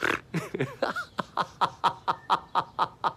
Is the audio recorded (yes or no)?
yes